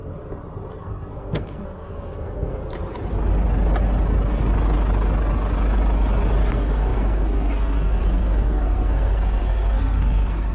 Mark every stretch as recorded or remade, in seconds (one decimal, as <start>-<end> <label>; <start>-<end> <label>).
0.0-0.8 recorded; 0.8-2.6 remade; 2.6-6.5 recorded; 6.5-10.5 remade